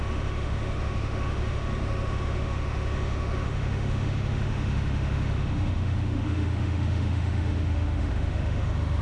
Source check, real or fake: fake